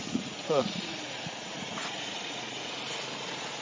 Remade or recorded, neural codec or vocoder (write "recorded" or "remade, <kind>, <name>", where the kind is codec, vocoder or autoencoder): remade, vocoder, Vocos